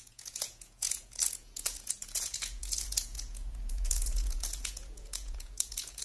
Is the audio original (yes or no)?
no